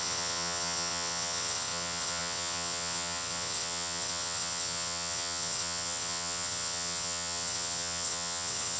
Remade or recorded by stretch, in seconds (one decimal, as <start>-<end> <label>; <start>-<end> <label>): 0.0-8.8 remade